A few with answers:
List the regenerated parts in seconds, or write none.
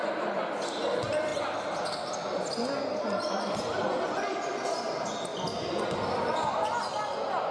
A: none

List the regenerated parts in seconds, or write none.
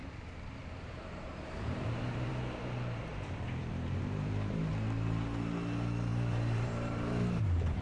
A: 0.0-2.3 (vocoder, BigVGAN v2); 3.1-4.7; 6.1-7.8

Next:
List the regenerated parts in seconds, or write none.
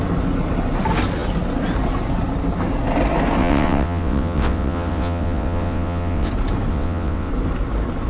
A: 3.4-6.3 (vocoder, WaveNeXt); 6.7-7.3